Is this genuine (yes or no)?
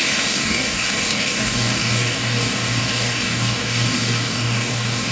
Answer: no